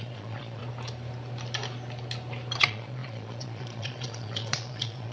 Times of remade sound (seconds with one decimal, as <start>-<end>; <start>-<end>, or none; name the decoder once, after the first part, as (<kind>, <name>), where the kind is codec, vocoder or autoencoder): 0.0-0.6 (vocoder, Vocos); 2.6-5.1